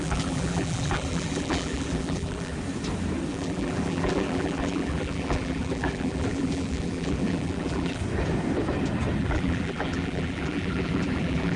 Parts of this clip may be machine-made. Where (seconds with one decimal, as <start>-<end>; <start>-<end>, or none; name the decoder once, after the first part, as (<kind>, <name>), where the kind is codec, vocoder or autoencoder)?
0.0-2.5 (vocoder, BigVGAN v2); 3.3-8.0; 9.2-11.6

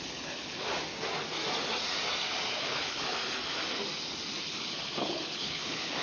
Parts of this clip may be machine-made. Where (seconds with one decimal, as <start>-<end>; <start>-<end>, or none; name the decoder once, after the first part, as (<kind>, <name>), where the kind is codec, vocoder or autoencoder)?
0.0-0.7 (codec, HILCodec); 2.6-3.2; 4.4-6.0

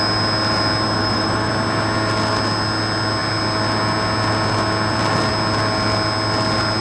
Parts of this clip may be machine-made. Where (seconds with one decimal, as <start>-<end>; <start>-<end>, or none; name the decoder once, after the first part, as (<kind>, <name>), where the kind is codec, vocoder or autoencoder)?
1.0-1.5 (autoencoder, DAC-VAE)

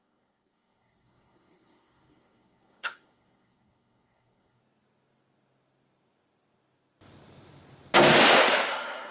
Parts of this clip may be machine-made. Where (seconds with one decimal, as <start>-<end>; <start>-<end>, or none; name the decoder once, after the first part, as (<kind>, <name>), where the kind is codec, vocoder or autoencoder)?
0.0-4.6 (codec, SNAC); 8.7-9.1

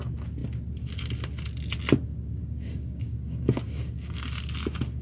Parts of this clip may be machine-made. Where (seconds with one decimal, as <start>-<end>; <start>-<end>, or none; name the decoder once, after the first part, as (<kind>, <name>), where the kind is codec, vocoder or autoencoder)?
2.4-4.2 (codec, DAC)

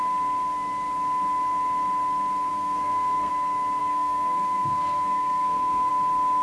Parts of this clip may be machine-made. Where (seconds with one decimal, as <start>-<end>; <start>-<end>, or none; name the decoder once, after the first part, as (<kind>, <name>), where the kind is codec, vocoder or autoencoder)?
2.5-3.3 (codec, SNAC); 3.8-5.9

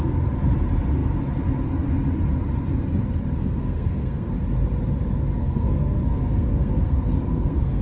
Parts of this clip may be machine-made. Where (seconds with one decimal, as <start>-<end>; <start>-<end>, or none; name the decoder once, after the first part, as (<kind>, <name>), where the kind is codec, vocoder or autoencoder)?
3.4-4.3 (codec, SNAC); 5.4-7.8

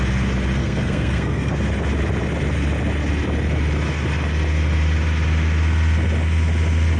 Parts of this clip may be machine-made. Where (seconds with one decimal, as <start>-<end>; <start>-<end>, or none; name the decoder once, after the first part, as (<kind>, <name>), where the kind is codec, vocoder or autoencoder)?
0.6-1.5 (codec, SNAC)